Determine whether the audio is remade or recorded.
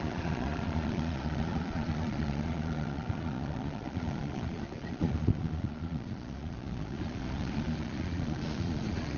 remade